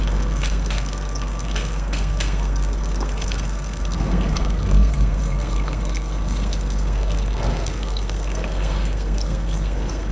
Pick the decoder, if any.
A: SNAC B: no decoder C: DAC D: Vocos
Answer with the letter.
A